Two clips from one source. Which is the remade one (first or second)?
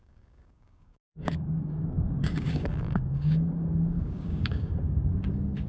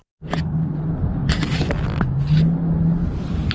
first